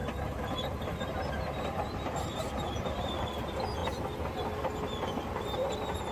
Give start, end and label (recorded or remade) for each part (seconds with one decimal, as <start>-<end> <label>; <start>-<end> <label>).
0.0-0.8 recorded; 0.8-3.8 remade; 3.8-5.1 recorded; 5.1-6.1 remade